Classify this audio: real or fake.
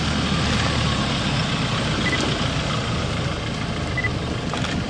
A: real